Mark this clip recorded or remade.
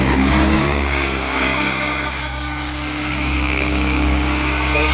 remade